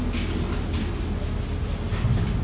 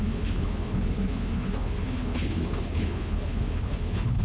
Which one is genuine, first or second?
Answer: first